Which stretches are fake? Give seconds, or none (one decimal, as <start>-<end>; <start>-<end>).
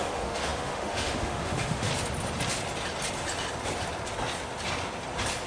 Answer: 0.0-1.9